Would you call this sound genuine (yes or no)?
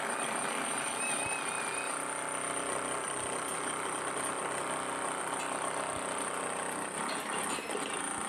yes